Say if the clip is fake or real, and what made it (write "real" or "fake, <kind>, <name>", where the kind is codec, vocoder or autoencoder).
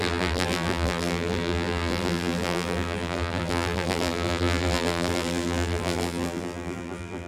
fake, vocoder, BigVGAN v2